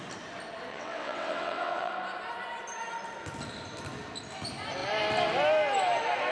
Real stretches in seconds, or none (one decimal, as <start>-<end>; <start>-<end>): 0.0-0.7; 1.9-6.3